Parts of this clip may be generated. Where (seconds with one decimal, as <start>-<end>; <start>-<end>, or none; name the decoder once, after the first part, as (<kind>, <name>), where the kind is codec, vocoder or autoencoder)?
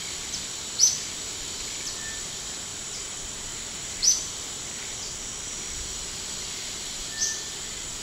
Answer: 0.0-8.0 (vocoder, BigVGAN v2)